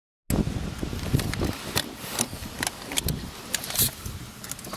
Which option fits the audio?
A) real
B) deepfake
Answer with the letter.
A